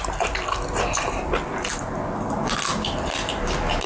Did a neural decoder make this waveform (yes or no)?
no